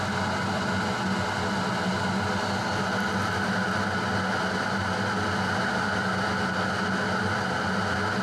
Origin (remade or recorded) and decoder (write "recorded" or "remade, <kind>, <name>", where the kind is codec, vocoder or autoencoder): recorded